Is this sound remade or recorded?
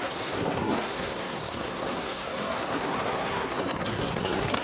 remade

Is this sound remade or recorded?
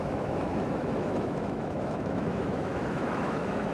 remade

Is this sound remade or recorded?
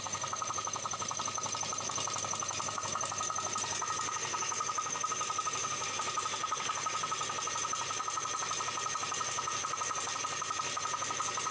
recorded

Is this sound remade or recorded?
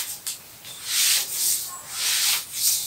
recorded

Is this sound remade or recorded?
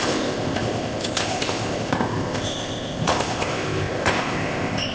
remade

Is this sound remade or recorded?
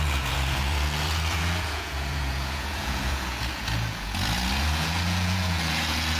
remade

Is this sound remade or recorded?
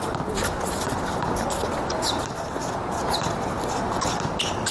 recorded